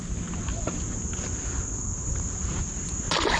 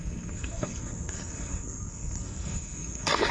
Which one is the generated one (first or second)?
second